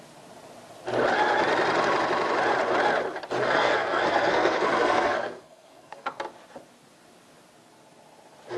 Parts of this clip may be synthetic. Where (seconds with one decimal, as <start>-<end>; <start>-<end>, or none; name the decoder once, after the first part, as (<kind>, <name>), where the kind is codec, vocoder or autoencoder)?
3.4-6.2 (codec, SNAC)

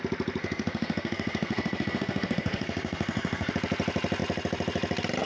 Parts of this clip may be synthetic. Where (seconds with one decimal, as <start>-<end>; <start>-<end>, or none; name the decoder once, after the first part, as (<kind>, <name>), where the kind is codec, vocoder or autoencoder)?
0.4-3.5 (codec, SNAC)